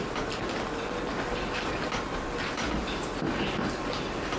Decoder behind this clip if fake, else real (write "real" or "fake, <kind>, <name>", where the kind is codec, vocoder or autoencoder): real